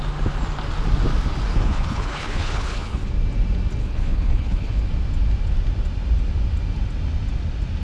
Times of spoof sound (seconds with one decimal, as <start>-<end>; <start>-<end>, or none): 1.5-3.1; 3.8-4.8